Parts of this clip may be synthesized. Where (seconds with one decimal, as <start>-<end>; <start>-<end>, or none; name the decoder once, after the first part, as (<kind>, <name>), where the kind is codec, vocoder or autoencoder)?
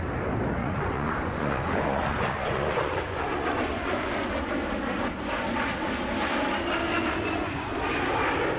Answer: 0.6-4.5 (vocoder, Vocos); 6.9-7.7